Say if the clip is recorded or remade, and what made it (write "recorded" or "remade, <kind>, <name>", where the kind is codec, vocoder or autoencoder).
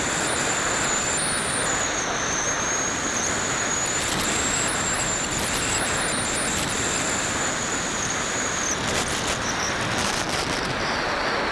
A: recorded